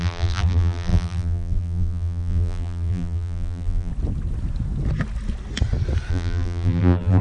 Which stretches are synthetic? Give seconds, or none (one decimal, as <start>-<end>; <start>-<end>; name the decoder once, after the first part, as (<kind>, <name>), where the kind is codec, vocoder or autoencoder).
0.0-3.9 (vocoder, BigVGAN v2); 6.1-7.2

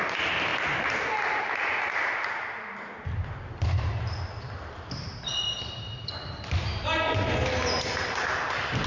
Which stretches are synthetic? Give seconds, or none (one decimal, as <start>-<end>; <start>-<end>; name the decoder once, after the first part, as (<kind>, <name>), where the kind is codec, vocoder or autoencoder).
none

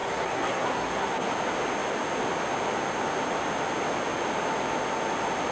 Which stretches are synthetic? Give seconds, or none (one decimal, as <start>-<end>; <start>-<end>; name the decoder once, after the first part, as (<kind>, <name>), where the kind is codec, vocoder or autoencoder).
0.0-1.3 (codec, SNAC)